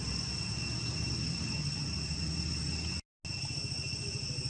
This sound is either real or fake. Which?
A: real